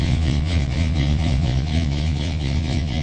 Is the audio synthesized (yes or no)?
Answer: yes